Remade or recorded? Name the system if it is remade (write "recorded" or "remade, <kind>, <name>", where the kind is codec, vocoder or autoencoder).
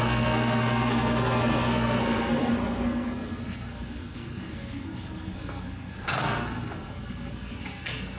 remade, codec, SNAC